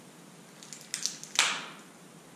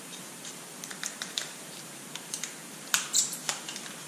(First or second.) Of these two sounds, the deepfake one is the second